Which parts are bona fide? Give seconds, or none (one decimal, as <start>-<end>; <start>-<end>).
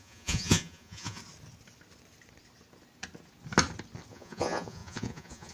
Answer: 1.2-4.1